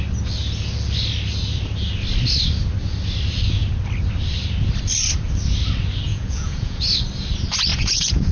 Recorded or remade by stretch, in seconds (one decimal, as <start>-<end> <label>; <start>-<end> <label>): 0.0-6.1 recorded; 6.1-6.8 remade; 6.8-7.7 recorded; 7.7-8.3 remade

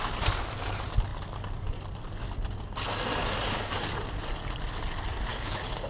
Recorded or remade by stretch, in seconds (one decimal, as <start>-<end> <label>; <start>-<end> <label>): 0.0-3.2 recorded; 3.2-3.8 remade; 3.8-5.3 recorded; 5.3-5.9 remade

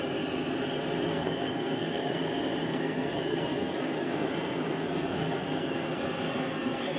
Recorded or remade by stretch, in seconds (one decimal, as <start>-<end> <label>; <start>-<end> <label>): 0.0-1.1 recorded; 1.1-2.2 remade; 2.2-2.6 recorded; 2.6-7.0 remade

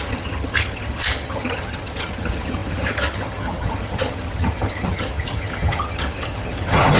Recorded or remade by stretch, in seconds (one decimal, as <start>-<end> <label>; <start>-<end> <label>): 0.0-7.0 remade

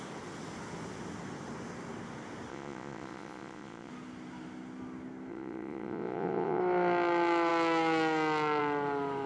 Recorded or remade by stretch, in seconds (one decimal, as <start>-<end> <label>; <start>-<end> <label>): 0.0-2.5 recorded; 2.5-3.9 remade; 3.9-5.3 recorded; 5.3-6.6 remade; 6.6-9.3 recorded